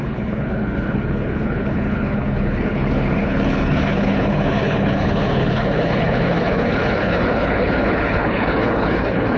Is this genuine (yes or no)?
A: no